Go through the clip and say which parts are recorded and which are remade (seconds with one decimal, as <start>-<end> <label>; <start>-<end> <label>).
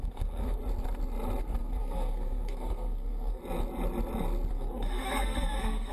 0.0-0.6 remade; 0.6-1.4 recorded; 1.4-3.4 remade; 3.4-4.5 recorded; 4.5-5.9 remade